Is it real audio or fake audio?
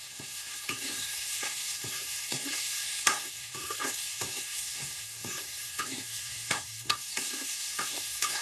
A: fake